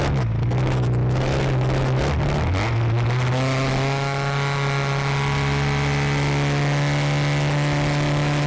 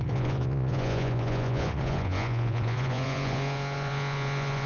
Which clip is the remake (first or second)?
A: second